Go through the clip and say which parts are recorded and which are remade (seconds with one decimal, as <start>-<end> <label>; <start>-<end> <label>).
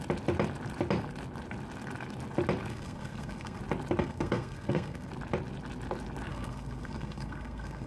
0.0-2.7 recorded; 2.7-3.6 remade; 3.6-4.0 recorded; 4.0-5.1 remade; 5.1-6.3 recorded; 6.3-7.9 remade